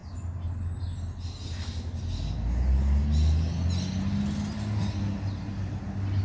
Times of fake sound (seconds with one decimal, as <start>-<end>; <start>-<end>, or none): none